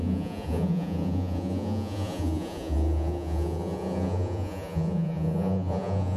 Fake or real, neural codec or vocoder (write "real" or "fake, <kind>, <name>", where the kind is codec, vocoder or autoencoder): fake, vocoder, Vocos